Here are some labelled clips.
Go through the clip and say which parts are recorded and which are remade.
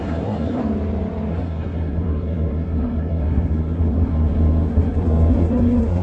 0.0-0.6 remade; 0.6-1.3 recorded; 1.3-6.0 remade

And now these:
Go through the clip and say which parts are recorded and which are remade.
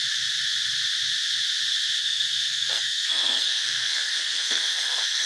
0.0-2.0 recorded; 2.0-5.3 remade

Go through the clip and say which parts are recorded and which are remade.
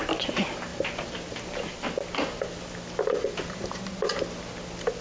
0.0-5.0 recorded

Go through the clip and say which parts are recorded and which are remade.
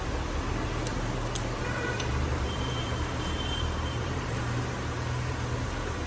0.0-0.9 recorded; 0.9-4.4 remade; 4.4-6.1 recorded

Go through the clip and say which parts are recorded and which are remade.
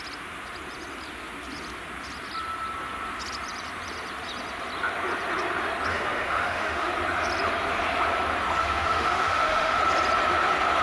0.0-5.9 recorded; 5.9-6.9 remade; 6.9-8.6 recorded; 8.6-9.8 remade; 9.8-10.8 recorded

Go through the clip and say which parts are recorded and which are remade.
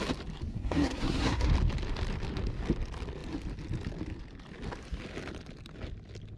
0.0-0.5 recorded; 0.5-1.5 remade; 1.5-6.4 recorded